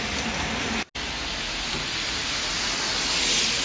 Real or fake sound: real